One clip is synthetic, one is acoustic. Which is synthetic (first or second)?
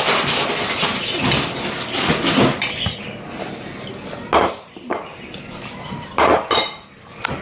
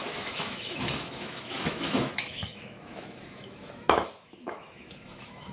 second